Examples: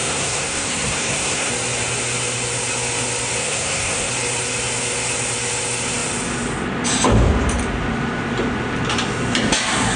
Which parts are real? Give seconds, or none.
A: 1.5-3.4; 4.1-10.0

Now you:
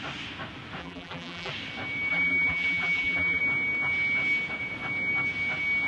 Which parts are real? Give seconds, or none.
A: 0.0-0.8; 1.5-2.1; 3.4-5.9

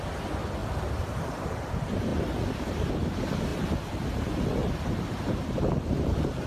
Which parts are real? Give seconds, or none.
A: 2.1-2.9; 3.5-4.9